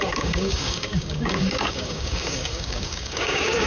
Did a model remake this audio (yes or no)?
yes